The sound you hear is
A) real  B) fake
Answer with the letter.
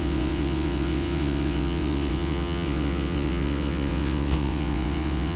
B